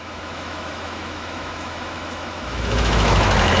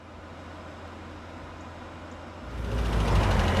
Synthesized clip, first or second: first